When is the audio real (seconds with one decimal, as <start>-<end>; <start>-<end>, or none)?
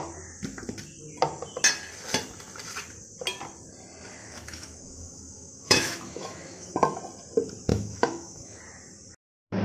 0.0-4.2; 7.0-7.7; 8.6-9.6